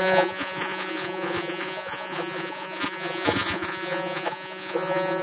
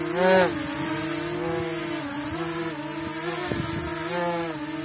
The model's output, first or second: first